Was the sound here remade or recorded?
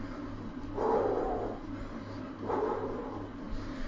recorded